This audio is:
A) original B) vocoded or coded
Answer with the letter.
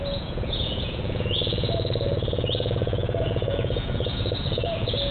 B